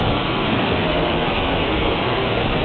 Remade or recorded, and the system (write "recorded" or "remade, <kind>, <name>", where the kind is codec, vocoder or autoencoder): remade, codec, SNAC